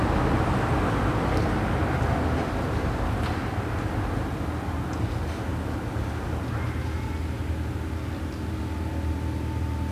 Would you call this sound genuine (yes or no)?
yes